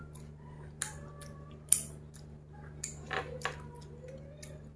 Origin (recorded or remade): recorded